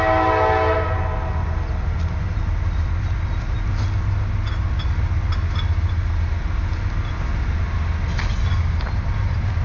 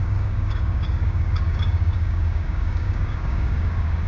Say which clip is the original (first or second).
first